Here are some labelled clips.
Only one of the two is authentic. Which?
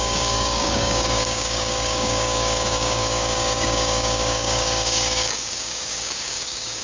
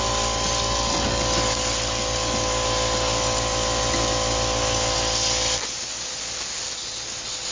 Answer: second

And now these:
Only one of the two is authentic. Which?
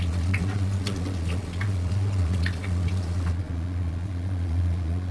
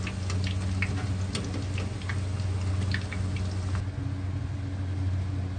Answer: second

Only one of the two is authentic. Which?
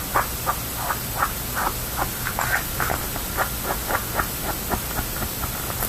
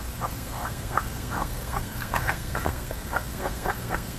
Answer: first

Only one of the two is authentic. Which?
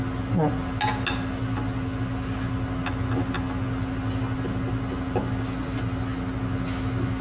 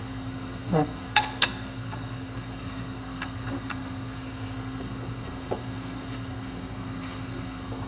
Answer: first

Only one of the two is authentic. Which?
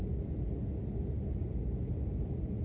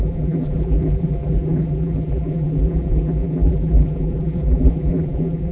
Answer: first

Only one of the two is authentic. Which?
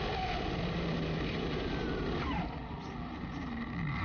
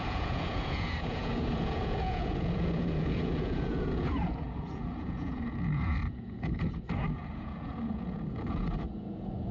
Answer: first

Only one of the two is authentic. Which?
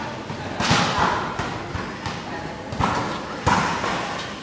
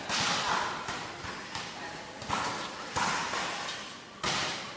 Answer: first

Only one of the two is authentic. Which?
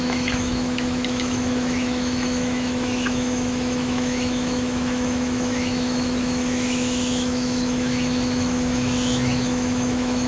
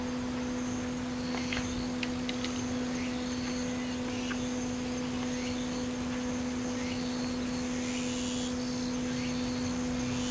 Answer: second